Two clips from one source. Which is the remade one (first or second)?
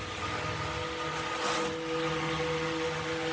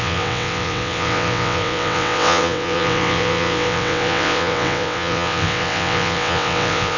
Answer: second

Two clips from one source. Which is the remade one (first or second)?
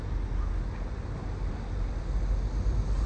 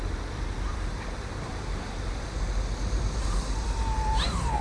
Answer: second